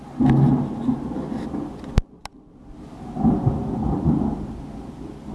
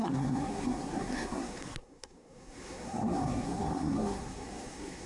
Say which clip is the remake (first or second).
second